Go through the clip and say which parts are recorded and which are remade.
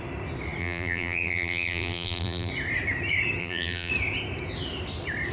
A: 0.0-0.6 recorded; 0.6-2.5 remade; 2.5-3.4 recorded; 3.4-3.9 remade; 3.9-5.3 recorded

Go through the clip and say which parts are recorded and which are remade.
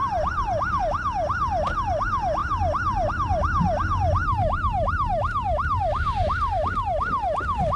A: 0.0-0.8 remade; 0.8-4.2 recorded; 4.2-6.7 remade; 6.7-7.8 recorded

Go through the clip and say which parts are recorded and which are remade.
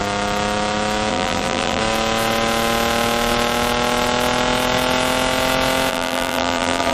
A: 0.0-1.1 recorded; 1.1-1.8 remade; 1.8-5.9 recorded; 5.9-6.9 remade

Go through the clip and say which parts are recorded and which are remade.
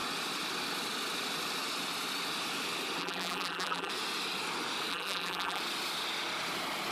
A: 0.0-3.0 recorded; 3.0-3.9 remade; 3.9-4.9 recorded; 4.9-5.6 remade; 5.6-6.9 recorded